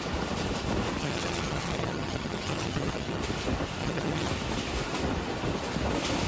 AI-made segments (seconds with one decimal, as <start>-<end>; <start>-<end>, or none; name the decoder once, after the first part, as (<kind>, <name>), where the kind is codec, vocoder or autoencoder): 1.0-3.2 (vocoder, HiFi-GAN); 3.8-4.3